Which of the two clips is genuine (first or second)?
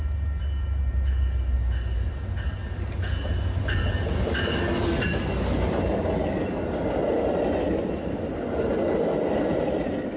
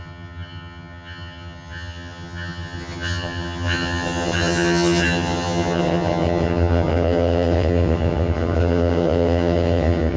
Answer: first